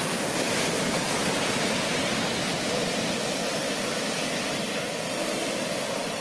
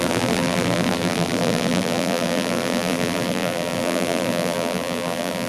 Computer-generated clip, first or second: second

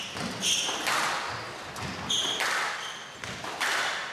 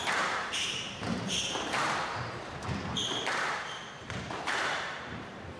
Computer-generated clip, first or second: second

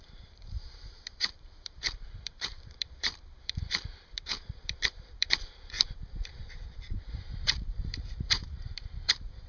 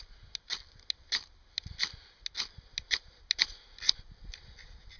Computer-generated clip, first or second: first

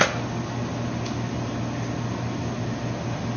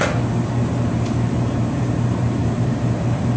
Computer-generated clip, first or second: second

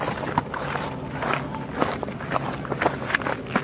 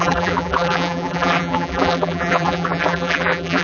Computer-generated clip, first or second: second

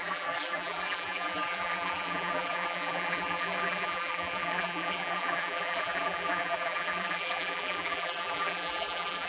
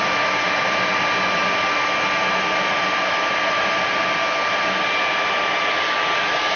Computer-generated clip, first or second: first